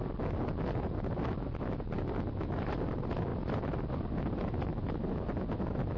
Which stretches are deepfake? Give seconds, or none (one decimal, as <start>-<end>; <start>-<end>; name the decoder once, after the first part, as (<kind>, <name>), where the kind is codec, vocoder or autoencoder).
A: none